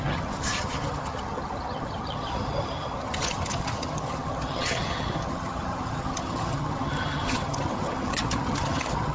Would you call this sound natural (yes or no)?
no